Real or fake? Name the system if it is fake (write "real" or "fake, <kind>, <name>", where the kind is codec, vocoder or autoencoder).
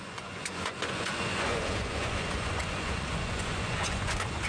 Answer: fake, vocoder, Vocos